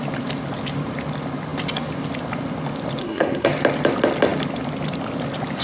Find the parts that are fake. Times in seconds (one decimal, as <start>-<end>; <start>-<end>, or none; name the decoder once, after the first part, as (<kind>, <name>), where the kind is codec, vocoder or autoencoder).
3.0-3.5 (codec, SNAC)